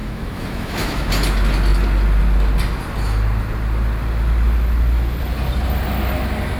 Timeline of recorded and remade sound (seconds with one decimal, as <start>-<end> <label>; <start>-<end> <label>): 0.0-1.1 remade; 1.1-6.6 recorded